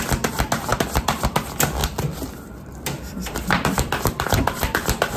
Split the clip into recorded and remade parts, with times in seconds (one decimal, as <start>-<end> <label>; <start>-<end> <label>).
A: 0.0-0.7 recorded; 0.7-1.2 remade; 1.2-1.8 recorded; 1.8-5.2 remade